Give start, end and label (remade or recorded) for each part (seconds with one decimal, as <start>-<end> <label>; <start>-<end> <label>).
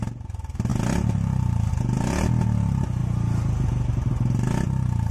0.0-5.1 recorded